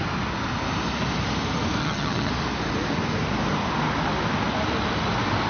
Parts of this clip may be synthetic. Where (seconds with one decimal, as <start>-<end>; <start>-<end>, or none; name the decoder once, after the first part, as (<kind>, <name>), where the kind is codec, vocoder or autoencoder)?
1.8-2.3 (vocoder, HiFi-GAN)